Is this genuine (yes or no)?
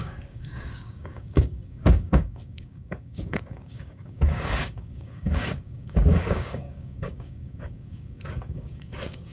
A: no